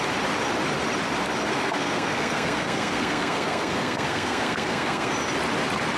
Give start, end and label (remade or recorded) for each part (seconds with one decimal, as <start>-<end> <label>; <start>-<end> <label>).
0.0-1.5 recorded; 1.5-5.1 remade; 5.1-6.0 recorded